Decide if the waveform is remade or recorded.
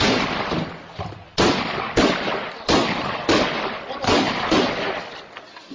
recorded